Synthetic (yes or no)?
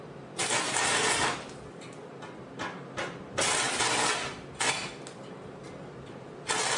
yes